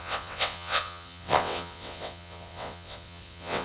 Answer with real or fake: fake